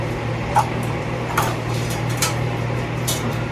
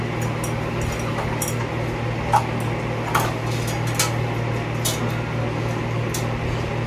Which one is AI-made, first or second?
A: first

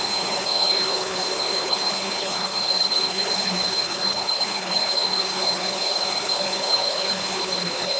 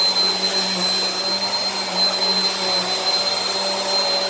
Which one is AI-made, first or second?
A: first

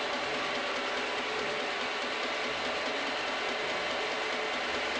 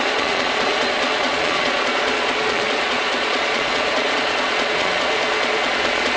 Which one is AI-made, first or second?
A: second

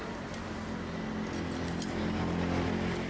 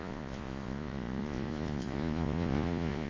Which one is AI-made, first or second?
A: second